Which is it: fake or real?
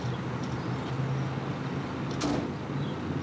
real